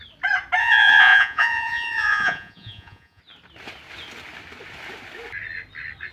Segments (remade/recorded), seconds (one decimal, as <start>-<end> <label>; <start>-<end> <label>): 0.0-0.6 recorded; 0.6-3.2 remade; 3.2-6.1 recorded